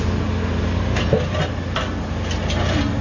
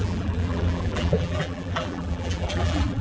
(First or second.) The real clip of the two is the first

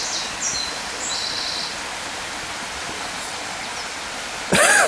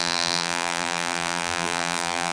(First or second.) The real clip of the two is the first